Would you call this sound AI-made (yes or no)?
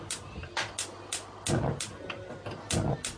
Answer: no